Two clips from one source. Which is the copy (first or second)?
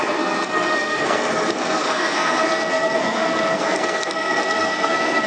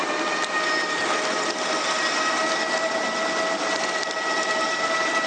first